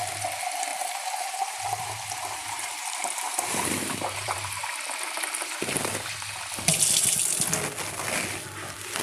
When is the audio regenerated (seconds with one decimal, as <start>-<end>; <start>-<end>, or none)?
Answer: 0.7-4.6